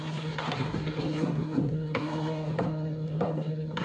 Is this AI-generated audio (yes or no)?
yes